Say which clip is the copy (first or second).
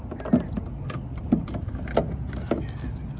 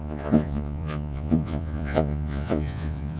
second